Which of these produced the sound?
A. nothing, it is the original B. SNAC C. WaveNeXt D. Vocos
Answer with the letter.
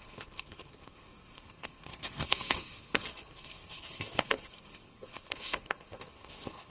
B